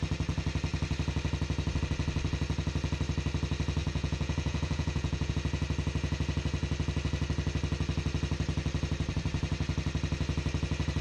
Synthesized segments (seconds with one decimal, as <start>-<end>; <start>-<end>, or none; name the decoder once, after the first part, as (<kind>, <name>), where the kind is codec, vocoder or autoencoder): 3.8-5.3 (vocoder, Vocos)